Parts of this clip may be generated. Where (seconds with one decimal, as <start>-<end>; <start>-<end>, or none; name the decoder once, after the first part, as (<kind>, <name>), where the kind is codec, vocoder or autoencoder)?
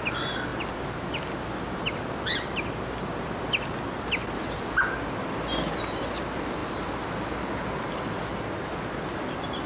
none